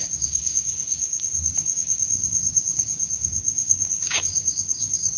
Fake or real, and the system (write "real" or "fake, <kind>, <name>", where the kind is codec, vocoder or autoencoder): fake, codec, DAC